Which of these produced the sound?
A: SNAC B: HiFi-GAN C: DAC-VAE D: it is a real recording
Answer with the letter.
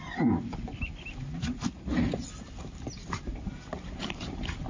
D